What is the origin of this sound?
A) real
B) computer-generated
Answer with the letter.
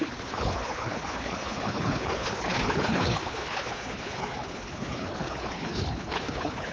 B